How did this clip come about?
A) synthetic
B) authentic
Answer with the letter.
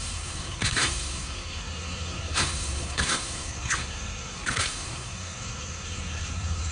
A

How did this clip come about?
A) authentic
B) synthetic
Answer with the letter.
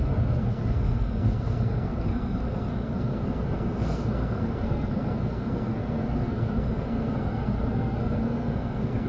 B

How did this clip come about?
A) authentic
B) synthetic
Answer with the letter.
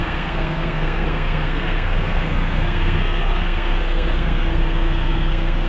B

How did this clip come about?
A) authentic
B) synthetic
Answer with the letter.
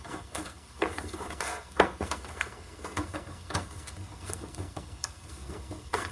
B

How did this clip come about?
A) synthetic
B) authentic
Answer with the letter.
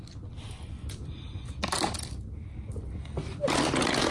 B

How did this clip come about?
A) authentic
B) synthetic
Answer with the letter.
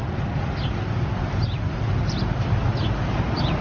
A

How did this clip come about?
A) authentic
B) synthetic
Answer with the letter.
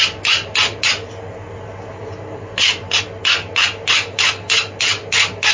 A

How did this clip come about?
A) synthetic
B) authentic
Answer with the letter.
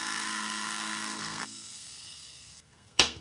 A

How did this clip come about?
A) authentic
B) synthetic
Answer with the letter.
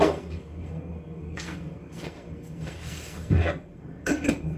B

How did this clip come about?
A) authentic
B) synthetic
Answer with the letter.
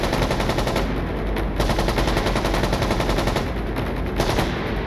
A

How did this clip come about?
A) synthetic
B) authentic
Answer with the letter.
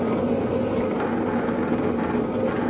B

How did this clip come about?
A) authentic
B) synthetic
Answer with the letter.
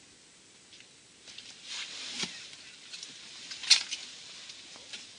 A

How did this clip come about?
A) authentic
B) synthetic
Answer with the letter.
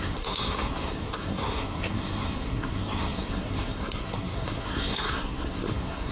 B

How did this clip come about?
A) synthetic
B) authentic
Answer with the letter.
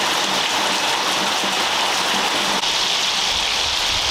B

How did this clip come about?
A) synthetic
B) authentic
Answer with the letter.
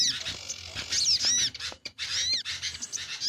B